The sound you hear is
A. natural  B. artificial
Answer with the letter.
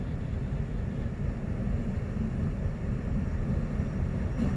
A